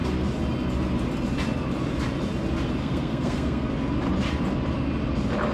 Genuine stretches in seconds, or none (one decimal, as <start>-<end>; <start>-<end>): 0.0-2.8; 3.7-5.5